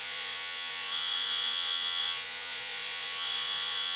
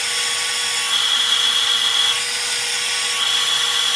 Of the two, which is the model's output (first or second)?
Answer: first